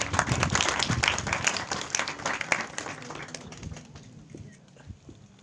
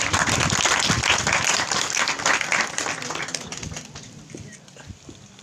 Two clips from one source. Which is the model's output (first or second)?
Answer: second